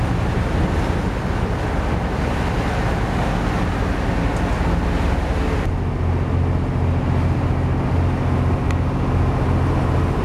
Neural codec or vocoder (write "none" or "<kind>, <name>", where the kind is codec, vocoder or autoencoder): none